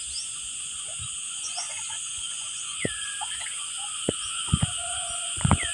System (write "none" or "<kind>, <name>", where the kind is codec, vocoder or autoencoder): vocoder, Vocos